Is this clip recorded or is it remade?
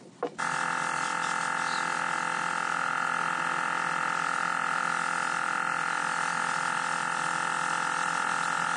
recorded